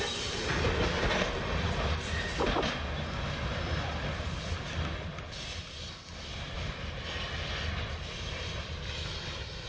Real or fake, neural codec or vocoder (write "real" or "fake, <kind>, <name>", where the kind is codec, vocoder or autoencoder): real